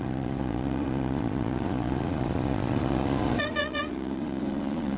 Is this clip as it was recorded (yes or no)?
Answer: no